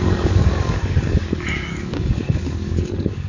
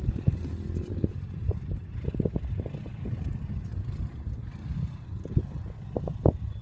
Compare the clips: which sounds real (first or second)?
second